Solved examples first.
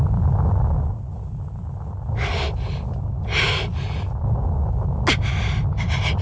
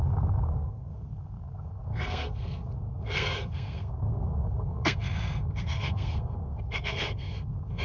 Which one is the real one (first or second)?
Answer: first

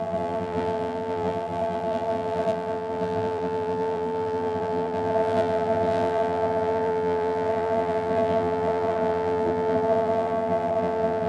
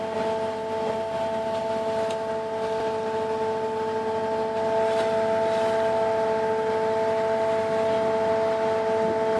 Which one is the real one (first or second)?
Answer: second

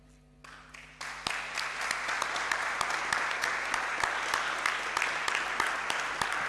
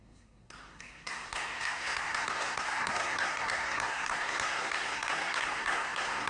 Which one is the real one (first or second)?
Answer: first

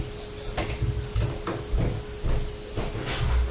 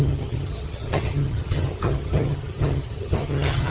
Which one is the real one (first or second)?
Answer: first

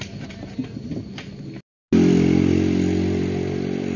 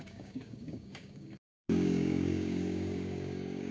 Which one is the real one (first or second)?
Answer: first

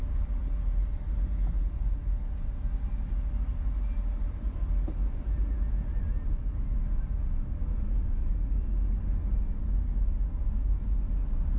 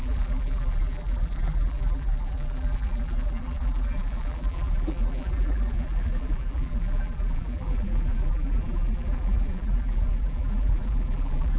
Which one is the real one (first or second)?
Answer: first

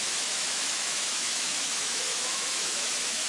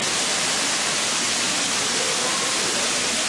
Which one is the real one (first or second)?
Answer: second